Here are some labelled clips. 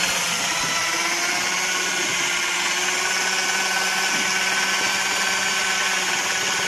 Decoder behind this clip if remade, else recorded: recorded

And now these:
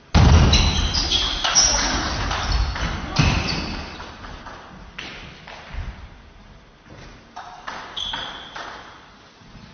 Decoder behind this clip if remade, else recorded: recorded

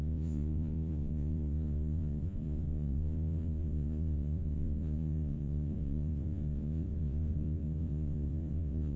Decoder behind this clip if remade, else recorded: remade, vocoder, Vocos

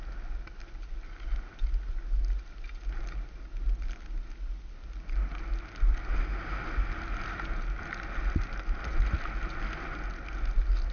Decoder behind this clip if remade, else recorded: recorded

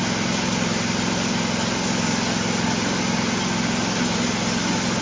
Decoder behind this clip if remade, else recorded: recorded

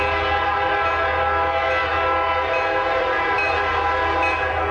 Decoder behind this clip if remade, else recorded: recorded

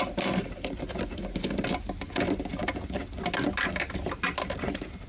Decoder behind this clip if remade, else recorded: recorded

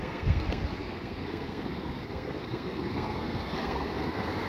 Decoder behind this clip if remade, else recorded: remade, codec, SNAC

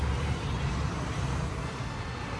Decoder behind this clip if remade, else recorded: recorded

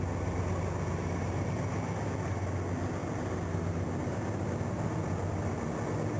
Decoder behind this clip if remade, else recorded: recorded